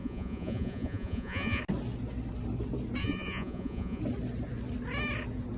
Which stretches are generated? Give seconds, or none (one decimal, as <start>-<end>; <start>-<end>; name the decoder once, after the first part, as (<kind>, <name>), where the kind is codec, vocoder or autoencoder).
0.0-1.6 (vocoder, Vocos); 3.0-4.0